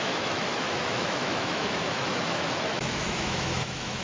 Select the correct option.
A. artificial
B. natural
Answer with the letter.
A